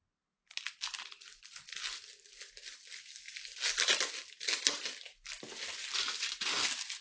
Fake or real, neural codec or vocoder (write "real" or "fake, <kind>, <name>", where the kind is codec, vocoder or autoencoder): real